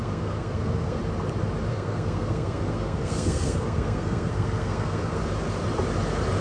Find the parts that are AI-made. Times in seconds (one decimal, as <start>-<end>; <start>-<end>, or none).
0.0-1.0; 1.7-5.2